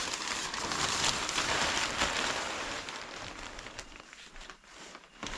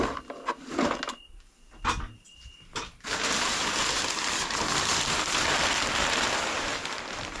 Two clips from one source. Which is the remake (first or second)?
first